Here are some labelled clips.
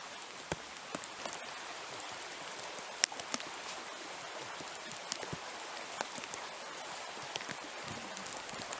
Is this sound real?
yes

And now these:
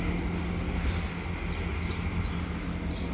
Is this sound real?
yes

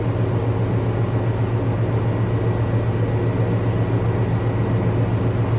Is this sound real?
yes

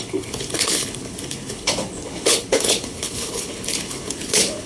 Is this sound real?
no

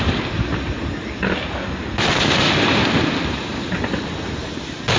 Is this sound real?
yes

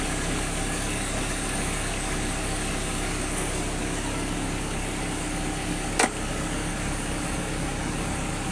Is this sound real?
no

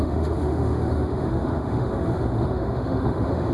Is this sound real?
no